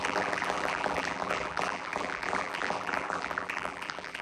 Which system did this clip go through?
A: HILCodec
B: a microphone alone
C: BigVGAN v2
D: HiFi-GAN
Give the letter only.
C